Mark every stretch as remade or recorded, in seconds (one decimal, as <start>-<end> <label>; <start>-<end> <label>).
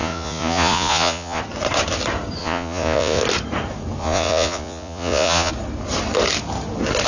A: 0.0-1.4 remade; 1.4-2.4 recorded; 2.4-3.2 remade; 3.2-4.0 recorded; 4.0-5.5 remade; 5.5-7.1 recorded